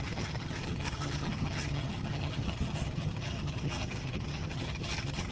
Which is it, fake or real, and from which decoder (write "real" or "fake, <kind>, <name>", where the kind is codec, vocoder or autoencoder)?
fake, vocoder, HiFi-GAN